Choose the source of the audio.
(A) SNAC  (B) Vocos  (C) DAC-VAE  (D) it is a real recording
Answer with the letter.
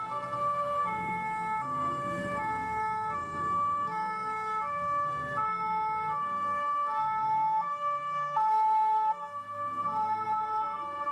A